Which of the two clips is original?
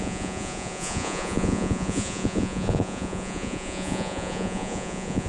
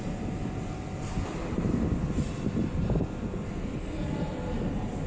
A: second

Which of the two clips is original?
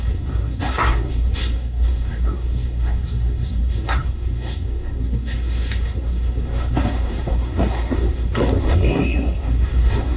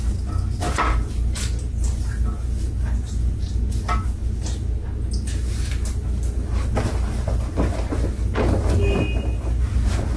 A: second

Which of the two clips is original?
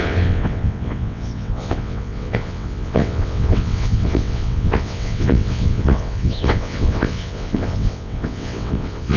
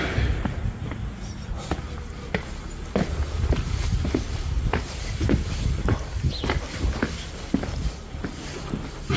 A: second